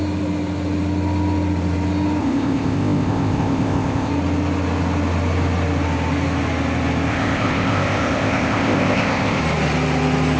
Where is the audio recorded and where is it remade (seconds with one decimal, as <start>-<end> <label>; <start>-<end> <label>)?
0.0-2.2 recorded; 2.2-4.1 remade; 4.1-7.1 recorded; 7.1-9.4 remade; 9.4-10.4 recorded